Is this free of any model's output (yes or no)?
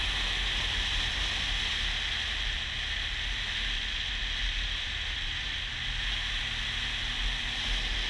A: yes